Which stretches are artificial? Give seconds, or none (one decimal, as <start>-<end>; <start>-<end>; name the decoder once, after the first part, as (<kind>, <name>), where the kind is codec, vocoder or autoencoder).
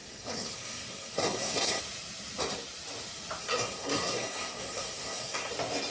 0.0-1.8 (codec, SNAC); 3.4-5.5